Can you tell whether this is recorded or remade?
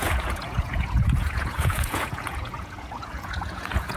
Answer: remade